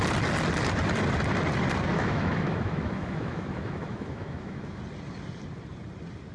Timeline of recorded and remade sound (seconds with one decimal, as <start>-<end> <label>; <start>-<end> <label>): 0.0-1.9 recorded; 1.9-4.8 remade; 4.8-6.3 recorded